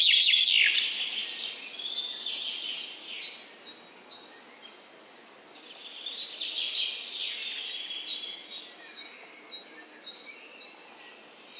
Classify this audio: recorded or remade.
recorded